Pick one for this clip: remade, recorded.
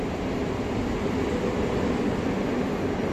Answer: recorded